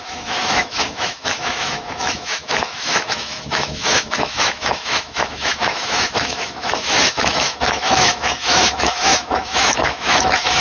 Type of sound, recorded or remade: remade